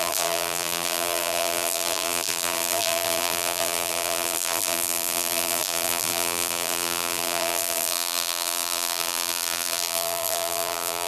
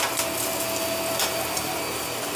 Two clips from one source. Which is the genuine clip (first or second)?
second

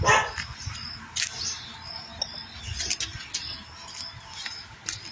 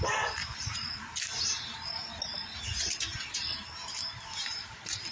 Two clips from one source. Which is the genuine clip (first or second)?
first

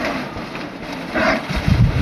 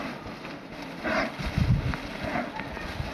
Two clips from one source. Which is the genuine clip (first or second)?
second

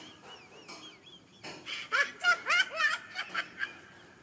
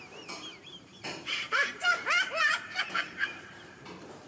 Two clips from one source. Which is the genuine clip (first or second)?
first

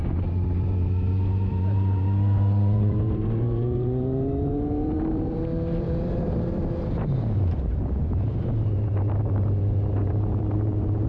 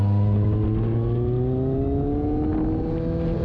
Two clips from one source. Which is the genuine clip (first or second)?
second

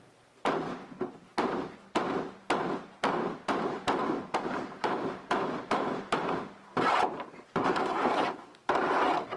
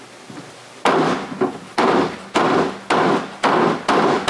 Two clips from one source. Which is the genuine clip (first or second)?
second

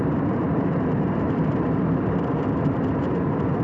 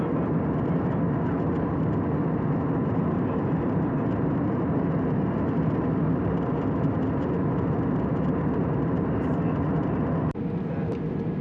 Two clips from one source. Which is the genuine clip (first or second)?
second